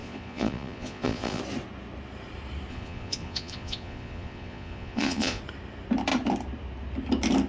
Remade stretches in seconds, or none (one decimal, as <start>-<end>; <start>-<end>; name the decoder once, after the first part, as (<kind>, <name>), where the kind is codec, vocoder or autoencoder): 0.0-1.4 (vocoder, Vocos); 2.7-5.4